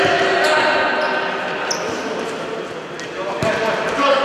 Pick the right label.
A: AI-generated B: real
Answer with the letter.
B